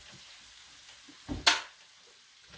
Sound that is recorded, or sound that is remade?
recorded